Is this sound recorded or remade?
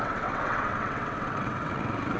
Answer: remade